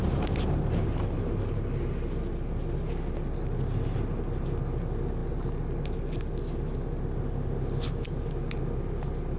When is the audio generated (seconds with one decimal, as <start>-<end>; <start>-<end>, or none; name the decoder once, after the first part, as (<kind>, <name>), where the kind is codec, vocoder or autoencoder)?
none